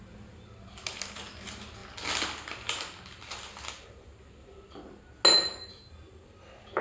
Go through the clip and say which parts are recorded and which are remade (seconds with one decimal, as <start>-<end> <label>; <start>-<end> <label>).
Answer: 0.0-6.8 recorded